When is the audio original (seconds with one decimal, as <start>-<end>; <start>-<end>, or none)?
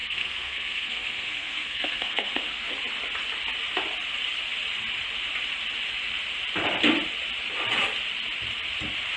2.7-9.2